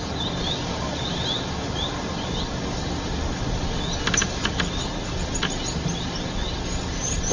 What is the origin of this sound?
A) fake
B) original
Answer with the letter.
B